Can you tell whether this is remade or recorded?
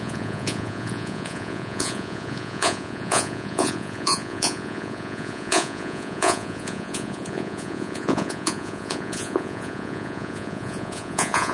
remade